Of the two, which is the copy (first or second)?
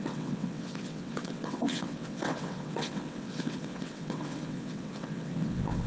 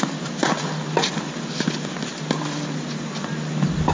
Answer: first